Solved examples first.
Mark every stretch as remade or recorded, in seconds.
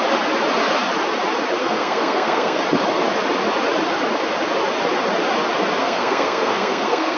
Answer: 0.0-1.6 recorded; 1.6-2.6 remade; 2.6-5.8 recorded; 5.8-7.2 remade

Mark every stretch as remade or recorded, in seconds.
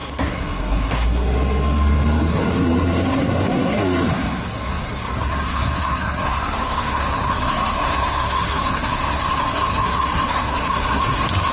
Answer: 0.0-11.5 remade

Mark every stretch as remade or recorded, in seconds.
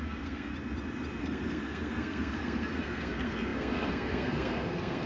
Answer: 0.0-0.5 remade; 0.5-1.2 recorded; 1.2-5.1 remade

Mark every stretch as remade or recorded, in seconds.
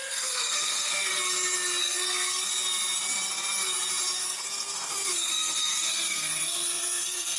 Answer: 0.0-1.1 remade; 1.1-1.8 recorded; 1.8-2.5 remade; 2.5-4.2 recorded; 4.2-7.4 remade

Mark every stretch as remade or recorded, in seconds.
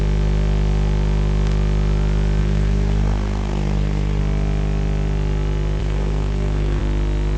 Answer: 0.0-2.4 recorded; 2.4-4.2 remade; 4.2-5.8 recorded; 5.8-6.8 remade; 6.8-7.4 recorded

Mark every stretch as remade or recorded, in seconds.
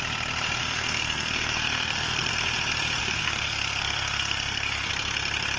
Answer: 0.0-0.6 recorded; 0.6-2.3 remade; 2.3-3.0 recorded; 3.0-4.9 remade; 4.9-5.6 recorded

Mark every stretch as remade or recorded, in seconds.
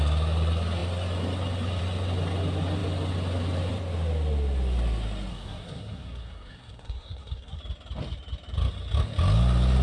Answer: 0.0-5.3 recorded; 5.3-7.6 remade; 7.6-9.8 recorded